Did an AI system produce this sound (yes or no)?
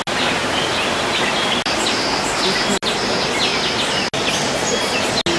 no